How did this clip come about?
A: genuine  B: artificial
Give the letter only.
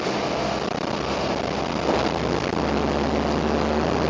A